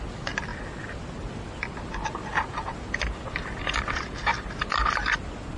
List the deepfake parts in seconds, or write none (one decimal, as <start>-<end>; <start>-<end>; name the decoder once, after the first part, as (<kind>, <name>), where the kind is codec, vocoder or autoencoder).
none